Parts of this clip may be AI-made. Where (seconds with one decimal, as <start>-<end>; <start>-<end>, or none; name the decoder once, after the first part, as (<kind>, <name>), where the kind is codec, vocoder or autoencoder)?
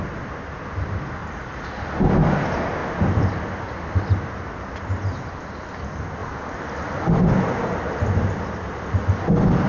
1.2-1.8 (vocoder, Vocos)